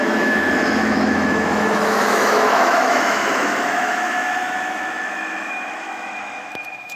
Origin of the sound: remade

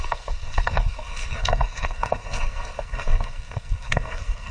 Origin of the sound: remade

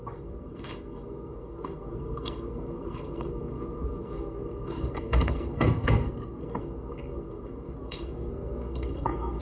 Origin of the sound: remade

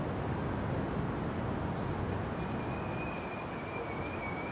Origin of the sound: recorded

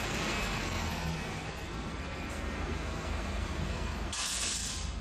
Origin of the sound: remade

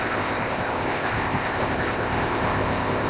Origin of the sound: remade